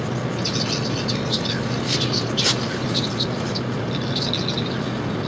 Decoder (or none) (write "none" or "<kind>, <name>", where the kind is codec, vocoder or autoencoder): none